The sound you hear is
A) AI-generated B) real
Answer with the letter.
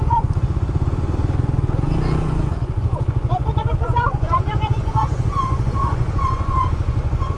A